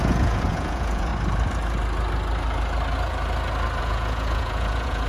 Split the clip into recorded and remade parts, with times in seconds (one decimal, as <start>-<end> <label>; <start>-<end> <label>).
0.0-1.1 remade; 1.1-3.8 recorded; 3.8-5.1 remade